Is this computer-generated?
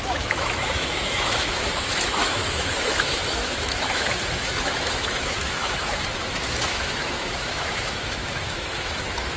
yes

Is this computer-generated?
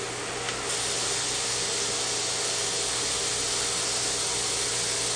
no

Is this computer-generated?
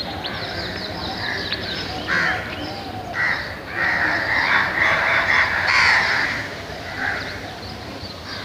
yes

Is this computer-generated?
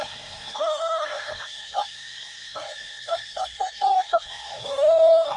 yes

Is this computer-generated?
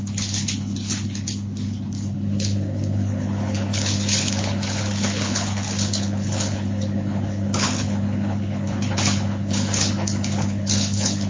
yes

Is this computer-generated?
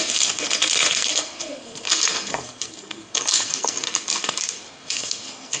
yes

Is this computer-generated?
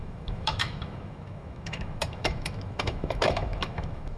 yes